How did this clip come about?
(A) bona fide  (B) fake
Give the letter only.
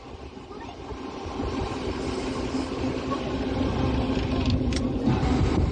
A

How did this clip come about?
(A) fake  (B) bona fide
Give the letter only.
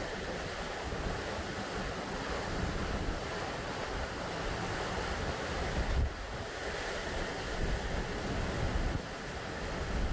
B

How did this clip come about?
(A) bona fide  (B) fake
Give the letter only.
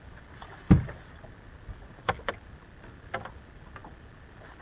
A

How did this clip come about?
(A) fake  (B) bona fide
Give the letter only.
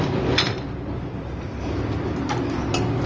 B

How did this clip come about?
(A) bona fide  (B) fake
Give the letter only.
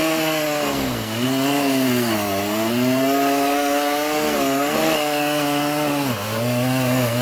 B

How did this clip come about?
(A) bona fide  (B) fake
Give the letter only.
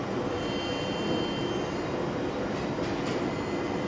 A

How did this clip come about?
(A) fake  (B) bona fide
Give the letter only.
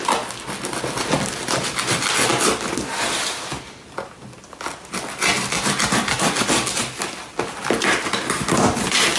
B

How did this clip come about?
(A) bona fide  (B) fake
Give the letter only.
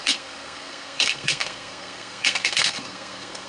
B